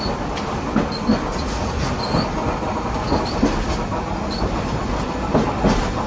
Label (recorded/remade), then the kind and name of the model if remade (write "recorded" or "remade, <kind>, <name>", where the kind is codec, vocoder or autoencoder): recorded